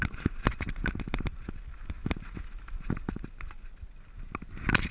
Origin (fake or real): real